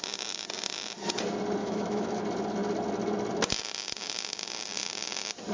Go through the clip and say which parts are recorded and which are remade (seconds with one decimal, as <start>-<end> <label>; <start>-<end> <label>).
0.0-1.6 recorded; 1.6-2.2 remade; 2.2-5.5 recorded